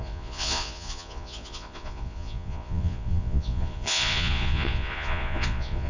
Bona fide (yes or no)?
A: no